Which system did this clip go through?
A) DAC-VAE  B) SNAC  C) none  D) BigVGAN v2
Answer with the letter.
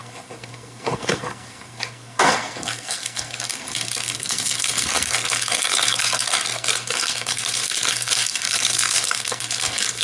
B